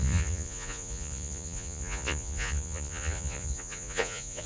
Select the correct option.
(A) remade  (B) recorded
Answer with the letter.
A